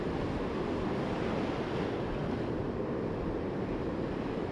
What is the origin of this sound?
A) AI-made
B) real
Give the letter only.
B